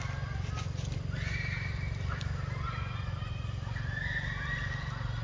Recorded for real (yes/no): yes